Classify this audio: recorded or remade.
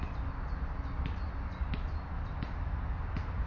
recorded